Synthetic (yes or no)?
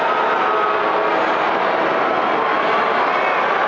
no